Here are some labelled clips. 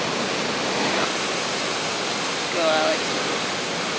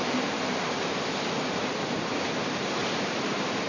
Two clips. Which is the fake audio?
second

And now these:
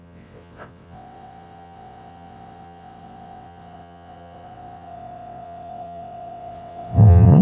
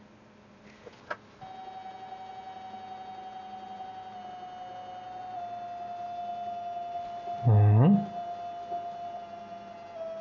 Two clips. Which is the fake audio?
first